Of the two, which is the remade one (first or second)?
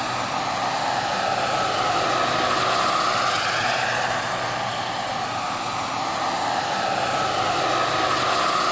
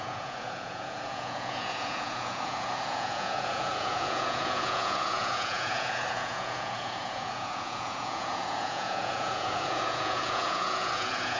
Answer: second